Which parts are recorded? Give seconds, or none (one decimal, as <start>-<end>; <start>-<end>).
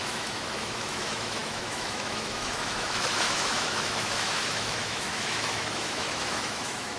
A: none